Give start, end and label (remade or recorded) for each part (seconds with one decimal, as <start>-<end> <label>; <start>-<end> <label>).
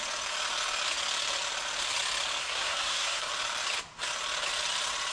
0.0-2.4 recorded; 2.4-3.3 remade; 3.3-5.1 recorded